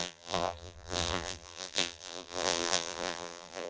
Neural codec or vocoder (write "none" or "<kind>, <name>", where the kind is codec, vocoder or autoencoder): vocoder, BigVGAN v2